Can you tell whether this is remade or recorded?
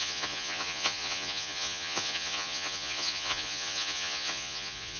remade